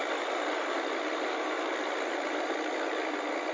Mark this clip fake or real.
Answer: real